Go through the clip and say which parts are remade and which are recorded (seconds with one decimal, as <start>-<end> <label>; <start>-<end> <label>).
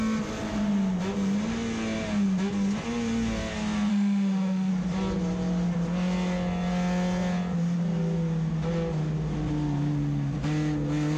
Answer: 0.0-3.9 recorded; 3.9-4.7 remade; 4.7-11.2 recorded